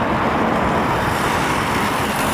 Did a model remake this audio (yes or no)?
yes